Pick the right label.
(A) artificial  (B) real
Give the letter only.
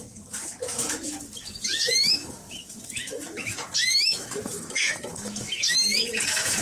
A